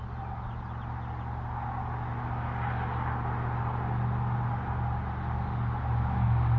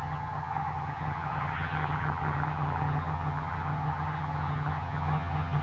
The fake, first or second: second